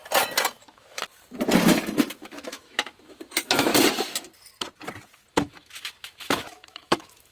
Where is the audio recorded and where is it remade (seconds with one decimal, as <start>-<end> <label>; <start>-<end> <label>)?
0.0-0.6 recorded; 0.6-1.0 remade; 1.0-2.1 recorded; 2.1-3.7 remade; 3.7-5.3 recorded; 5.3-7.3 remade